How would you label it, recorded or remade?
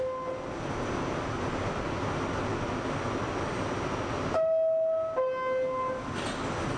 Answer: recorded